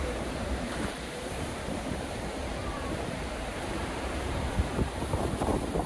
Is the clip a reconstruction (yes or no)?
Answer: yes